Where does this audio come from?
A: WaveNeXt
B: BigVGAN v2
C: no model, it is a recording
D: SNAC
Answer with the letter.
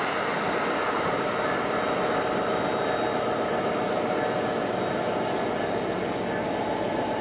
C